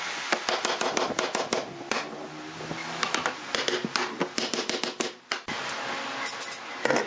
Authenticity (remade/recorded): recorded